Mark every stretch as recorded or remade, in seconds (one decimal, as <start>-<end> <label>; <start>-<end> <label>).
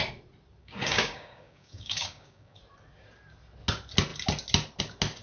0.0-0.6 recorded; 0.6-2.6 remade; 2.6-5.2 recorded